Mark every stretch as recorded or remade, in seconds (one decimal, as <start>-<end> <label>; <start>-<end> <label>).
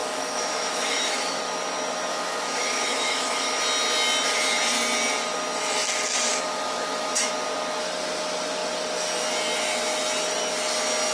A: 0.0-1.4 remade; 1.4-2.1 recorded; 2.1-3.6 remade; 3.6-6.3 recorded; 6.3-7.3 remade; 7.3-11.1 recorded